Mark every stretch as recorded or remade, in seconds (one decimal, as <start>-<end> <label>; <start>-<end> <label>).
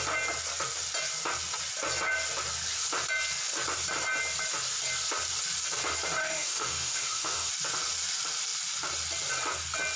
0.0-6.2 recorded; 6.2-7.5 remade; 7.5-10.0 recorded